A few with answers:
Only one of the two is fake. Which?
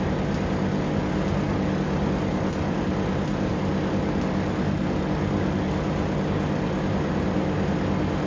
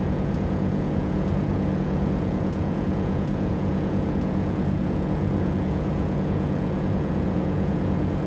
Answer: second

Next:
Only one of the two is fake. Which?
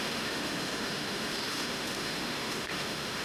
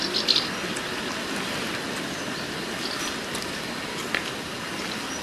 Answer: first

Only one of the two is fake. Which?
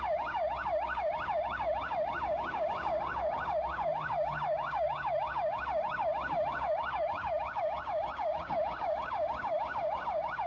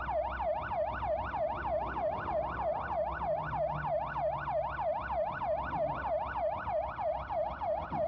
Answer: first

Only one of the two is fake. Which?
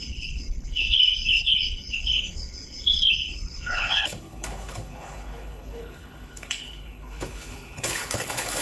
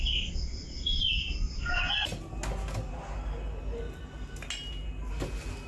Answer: first